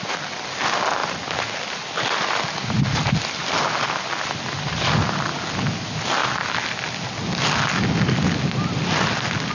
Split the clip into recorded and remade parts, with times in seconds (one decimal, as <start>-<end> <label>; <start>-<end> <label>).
0.0-9.5 recorded